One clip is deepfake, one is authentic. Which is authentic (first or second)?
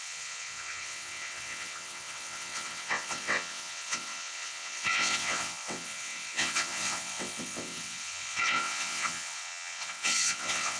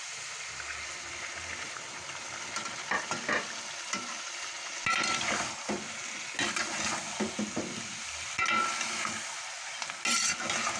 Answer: second